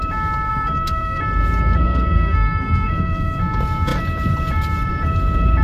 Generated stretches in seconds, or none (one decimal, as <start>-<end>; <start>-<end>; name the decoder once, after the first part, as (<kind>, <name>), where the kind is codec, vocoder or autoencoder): 0.5-1.2 (codec, SNAC); 1.8-3.4